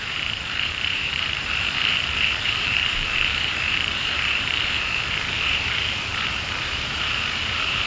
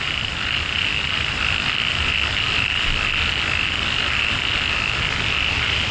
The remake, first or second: first